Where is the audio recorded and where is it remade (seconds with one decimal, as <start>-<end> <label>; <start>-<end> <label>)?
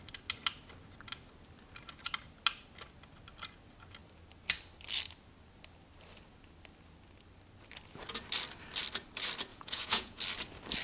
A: 0.0-9.5 recorded; 9.5-10.2 remade; 10.2-10.8 recorded